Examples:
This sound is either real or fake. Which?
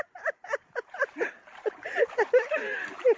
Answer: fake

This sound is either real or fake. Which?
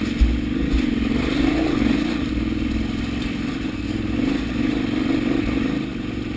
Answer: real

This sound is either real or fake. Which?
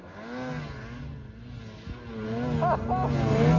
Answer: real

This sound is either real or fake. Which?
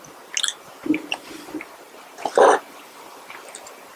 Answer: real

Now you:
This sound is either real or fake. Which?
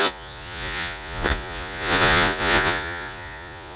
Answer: fake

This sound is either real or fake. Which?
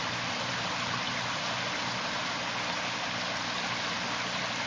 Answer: real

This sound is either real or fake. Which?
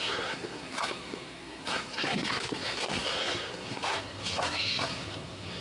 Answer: fake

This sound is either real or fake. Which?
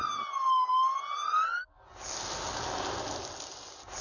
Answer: real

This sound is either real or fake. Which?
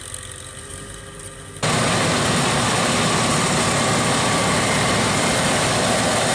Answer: real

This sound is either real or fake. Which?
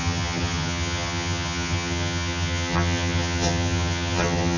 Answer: fake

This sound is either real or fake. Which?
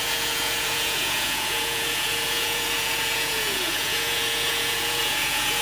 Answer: fake